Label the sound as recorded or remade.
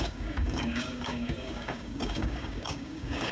remade